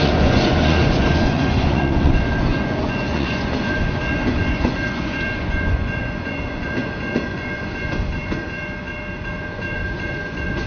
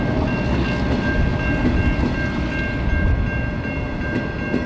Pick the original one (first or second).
second